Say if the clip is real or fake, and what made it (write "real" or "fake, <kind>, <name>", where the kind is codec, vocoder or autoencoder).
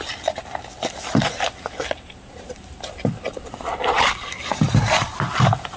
fake, vocoder, BigVGAN v2